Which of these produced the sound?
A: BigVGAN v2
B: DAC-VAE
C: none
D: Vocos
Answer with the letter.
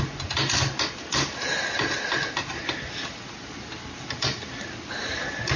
C